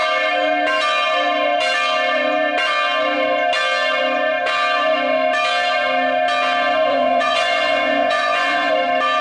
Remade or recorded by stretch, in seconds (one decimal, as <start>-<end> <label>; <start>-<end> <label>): 0.0-6.9 recorded; 6.9-8.7 remade; 8.7-9.2 recorded